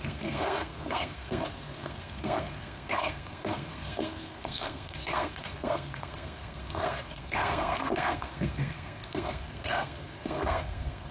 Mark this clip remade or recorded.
remade